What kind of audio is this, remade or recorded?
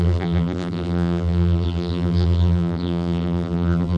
remade